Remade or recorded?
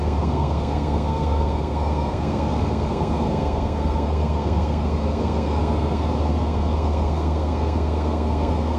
remade